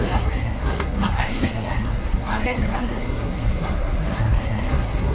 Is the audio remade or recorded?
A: remade